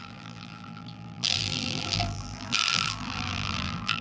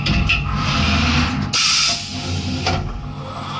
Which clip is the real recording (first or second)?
second